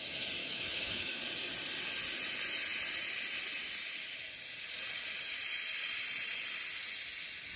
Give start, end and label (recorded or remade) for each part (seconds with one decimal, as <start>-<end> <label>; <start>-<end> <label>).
0.0-0.4 recorded; 0.4-1.2 remade; 1.2-7.6 recorded